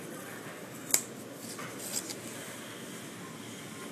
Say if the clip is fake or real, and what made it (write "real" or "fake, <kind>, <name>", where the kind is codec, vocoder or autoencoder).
real